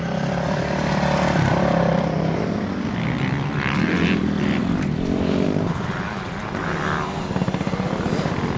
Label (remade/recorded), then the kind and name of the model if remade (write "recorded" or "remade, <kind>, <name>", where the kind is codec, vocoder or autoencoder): remade, vocoder, BigVGAN v2